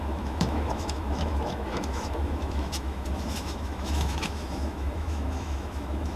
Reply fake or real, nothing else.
fake